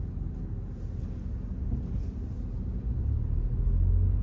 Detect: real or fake real